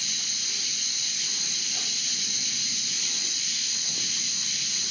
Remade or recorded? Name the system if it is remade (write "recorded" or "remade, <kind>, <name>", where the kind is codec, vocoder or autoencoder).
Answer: recorded